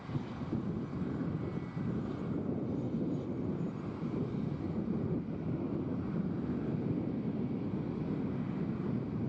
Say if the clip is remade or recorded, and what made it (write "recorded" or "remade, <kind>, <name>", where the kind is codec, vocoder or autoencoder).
recorded